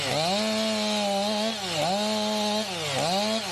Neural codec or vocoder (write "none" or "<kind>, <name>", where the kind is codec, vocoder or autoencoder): none